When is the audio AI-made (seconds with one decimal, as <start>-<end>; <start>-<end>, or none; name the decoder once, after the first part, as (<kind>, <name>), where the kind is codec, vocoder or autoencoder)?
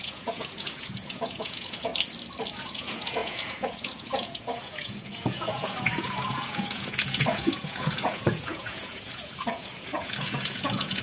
0.0-1.9 (vocoder, Vocos); 2.5-11.0